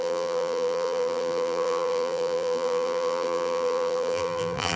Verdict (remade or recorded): remade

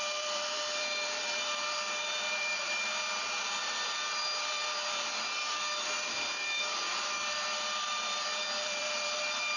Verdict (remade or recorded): remade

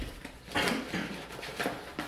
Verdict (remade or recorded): remade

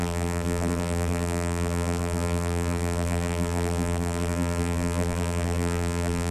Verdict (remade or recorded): remade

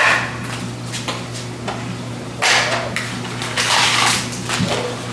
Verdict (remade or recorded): recorded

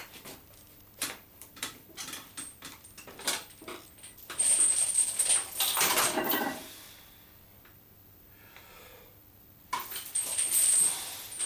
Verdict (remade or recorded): remade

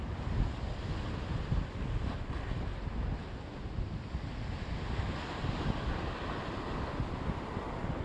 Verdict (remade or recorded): recorded